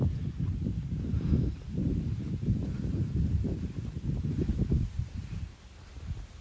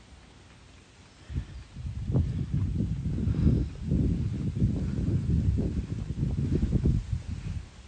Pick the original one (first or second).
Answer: second